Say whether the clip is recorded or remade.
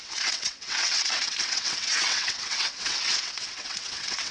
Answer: remade